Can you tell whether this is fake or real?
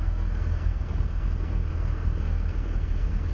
fake